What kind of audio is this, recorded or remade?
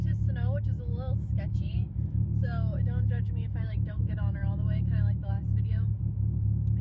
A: remade